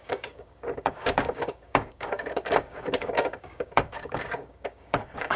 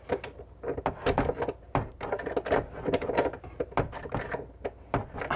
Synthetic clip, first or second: first